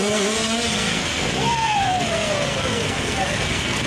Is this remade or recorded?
remade